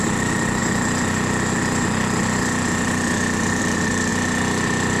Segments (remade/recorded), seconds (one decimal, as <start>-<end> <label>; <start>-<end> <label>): 0.0-0.6 remade; 0.6-3.6 recorded; 3.6-4.1 remade; 4.1-5.0 recorded